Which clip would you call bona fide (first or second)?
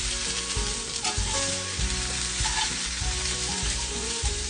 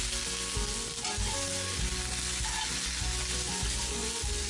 second